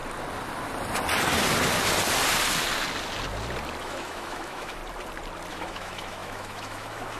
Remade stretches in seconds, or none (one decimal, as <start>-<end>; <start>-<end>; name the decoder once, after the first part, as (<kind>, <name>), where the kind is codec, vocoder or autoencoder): 3.8-4.8 (autoencoder, DAC-VAE); 5.5-7.2